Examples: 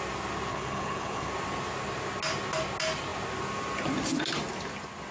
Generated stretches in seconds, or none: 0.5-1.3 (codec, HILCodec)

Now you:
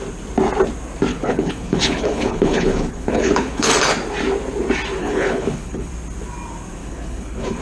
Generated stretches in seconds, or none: 1.1-3.7 (codec, HILCodec); 5.0-5.9; 6.8-7.6

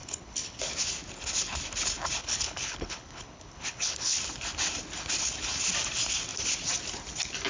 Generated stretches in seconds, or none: 0.0-0.6 (codec, HILCodec); 2.2-4.2

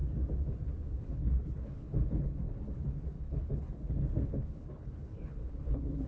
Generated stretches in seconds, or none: 1.0-6.1 (codec, HILCodec)

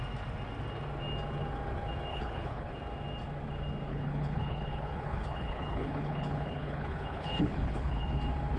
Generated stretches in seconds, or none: 2.1-2.7 (codec, HILCodec); 3.9-8.2

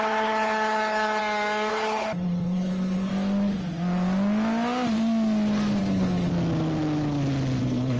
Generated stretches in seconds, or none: 0.0-1.2 (codec, HILCodec); 1.7-3.1; 5.8-6.3; 7.6-8.0

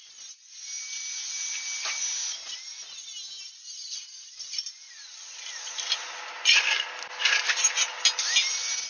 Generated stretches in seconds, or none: none